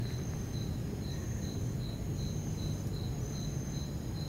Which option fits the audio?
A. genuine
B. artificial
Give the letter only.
A